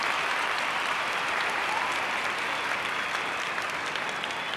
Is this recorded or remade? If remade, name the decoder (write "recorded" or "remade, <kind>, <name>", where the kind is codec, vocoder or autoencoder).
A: remade, vocoder, BigVGAN v2